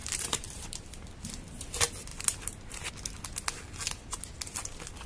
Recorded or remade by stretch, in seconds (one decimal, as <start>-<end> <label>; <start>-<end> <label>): 0.0-1.1 remade; 1.1-2.1 recorded; 2.1-2.9 remade; 2.9-5.1 recorded